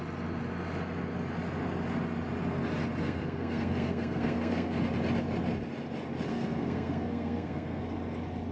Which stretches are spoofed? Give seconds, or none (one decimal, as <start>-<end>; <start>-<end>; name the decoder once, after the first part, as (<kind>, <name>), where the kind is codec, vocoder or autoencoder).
3.0-4.8 (codec, SNAC); 6.3-7.8